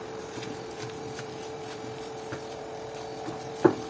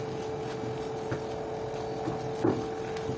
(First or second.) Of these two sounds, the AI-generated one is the first